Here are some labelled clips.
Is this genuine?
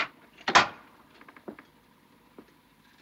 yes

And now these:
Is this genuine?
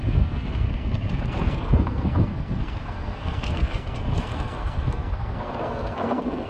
no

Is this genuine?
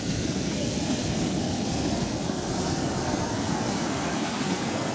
no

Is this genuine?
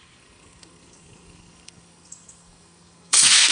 no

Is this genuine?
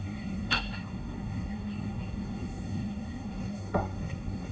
no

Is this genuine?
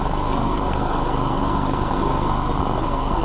no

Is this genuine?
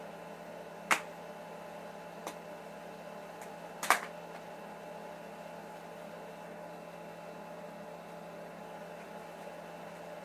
yes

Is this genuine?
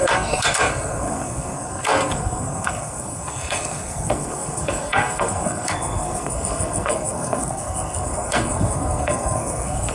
no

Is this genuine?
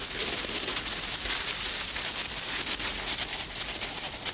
yes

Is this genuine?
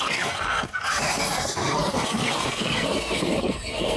no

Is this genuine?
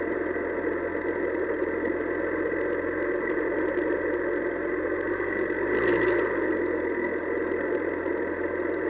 yes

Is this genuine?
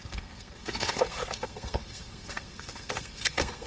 no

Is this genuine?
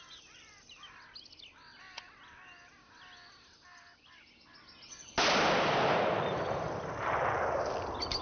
yes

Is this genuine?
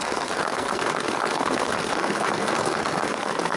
no